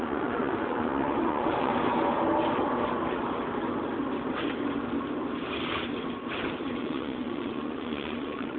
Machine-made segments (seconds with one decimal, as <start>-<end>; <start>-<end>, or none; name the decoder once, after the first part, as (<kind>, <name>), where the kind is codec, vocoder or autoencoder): 0.0-1.7 (vocoder, Vocos); 6.8-8.6